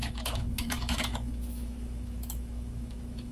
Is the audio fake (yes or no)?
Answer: yes